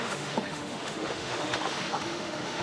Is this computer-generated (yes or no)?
yes